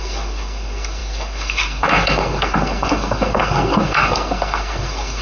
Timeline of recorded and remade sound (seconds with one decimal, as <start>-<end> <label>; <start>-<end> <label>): 0.0-5.2 remade